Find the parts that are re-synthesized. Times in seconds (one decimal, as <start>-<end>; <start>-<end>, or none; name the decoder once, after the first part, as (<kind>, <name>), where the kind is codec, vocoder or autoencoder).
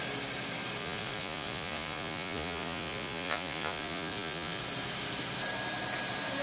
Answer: 0.8-4.6 (vocoder, Vocos)